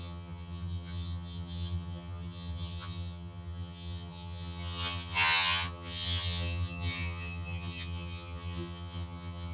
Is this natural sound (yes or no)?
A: no